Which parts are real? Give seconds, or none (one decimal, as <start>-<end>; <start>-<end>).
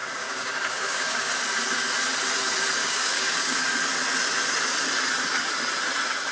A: 1.3-2.8; 3.6-6.3